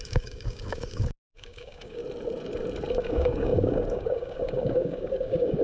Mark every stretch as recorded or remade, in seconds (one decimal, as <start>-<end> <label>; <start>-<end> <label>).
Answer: 0.0-2.0 remade; 2.0-2.9 recorded; 2.9-5.6 remade